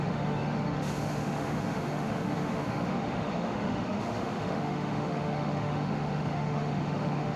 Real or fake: fake